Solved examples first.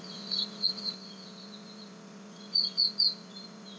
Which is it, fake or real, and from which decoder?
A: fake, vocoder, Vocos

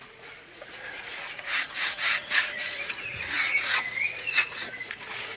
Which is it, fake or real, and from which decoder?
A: fake, vocoder, Vocos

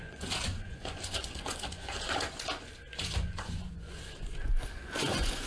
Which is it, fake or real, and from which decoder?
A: fake, vocoder, Vocos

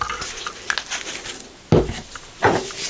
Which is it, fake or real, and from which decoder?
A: real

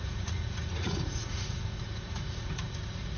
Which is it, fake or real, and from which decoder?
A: fake, vocoder, Vocos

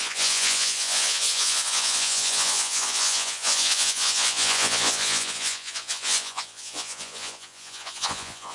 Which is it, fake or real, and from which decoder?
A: fake, vocoder, Vocos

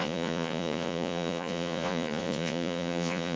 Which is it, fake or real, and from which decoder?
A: fake, vocoder, Vocos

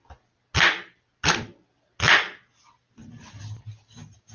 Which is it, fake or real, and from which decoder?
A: real